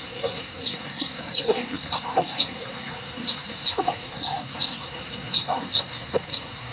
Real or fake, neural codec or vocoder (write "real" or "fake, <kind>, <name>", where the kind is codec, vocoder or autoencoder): fake, codec, SNAC